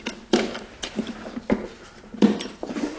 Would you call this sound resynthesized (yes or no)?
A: yes